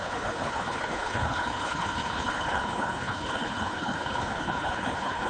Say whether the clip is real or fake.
fake